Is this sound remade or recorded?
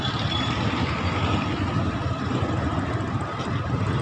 recorded